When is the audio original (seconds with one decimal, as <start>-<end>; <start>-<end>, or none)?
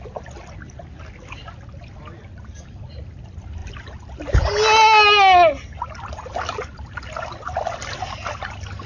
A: 0.0-8.9